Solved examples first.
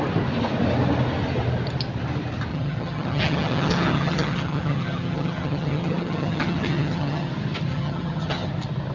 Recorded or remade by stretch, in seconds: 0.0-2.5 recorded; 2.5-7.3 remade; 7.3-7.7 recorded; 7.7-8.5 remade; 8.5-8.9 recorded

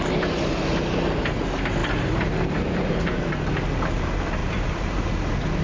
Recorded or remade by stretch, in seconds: 0.0-1.8 recorded; 1.8-3.3 remade; 3.3-4.4 recorded; 4.4-5.0 remade; 5.0-5.6 recorded

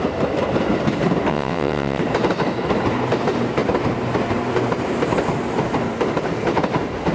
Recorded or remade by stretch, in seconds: 0.0-1.3 recorded; 1.3-2.0 remade; 2.0-7.1 recorded